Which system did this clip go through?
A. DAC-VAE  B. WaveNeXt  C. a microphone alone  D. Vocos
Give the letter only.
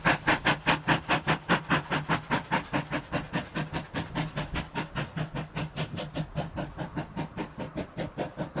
C